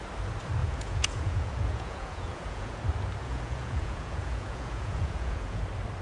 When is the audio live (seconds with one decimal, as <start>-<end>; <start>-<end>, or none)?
0.0-0.6; 2.8-3.2; 5.6-6.0